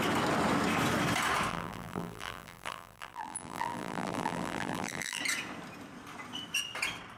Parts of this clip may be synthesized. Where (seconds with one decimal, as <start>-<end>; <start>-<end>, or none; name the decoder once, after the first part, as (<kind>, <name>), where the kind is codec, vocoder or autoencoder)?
1.5-5.2 (vocoder, BigVGAN v2)